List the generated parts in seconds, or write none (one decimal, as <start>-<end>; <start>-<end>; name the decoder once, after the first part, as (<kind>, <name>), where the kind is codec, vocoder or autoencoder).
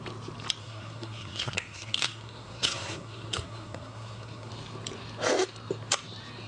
0.6-4.5 (codec, SNAC)